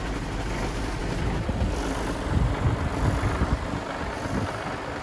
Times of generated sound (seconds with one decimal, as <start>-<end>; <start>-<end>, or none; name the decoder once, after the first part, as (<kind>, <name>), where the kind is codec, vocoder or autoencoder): none